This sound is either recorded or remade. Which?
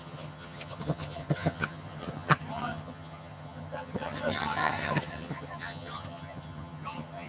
remade